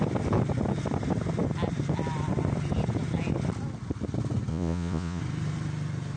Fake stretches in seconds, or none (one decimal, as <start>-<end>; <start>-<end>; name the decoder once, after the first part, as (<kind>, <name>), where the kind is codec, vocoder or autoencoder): 4.5-5.2 (vocoder, Vocos)